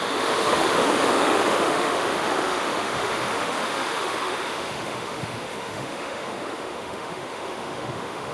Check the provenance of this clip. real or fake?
fake